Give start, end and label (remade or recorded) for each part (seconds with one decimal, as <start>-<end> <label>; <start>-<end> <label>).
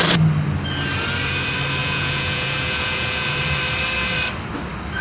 0.0-1.8 recorded; 1.8-3.4 remade; 3.4-5.0 recorded